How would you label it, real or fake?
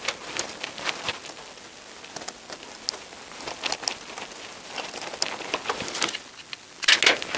real